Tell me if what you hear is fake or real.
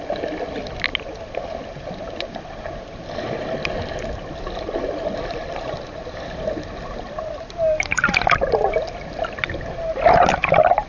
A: real